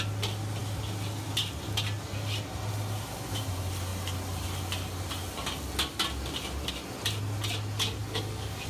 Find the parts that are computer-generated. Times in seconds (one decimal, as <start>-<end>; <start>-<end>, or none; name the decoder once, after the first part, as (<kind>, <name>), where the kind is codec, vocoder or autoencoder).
8.0-8.7 (codec, DAC)